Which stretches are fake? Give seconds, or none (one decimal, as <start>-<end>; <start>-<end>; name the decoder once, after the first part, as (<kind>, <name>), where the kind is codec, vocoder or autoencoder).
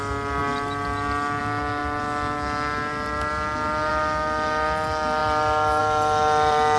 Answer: none